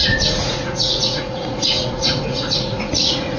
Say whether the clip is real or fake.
fake